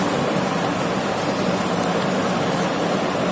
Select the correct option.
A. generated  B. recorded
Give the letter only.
B